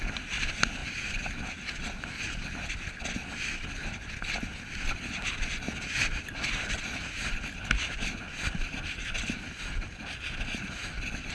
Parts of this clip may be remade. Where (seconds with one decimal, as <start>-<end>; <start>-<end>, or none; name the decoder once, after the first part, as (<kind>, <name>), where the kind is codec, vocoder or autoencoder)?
none